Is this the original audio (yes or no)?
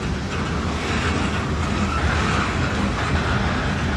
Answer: yes